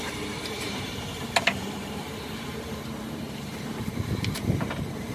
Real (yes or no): no